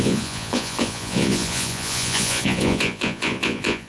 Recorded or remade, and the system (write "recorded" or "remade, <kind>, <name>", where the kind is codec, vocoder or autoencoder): remade, vocoder, Vocos